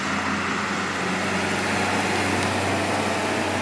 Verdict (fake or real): real